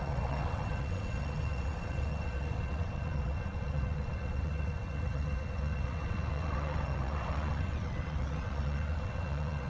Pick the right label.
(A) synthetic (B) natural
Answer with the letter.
A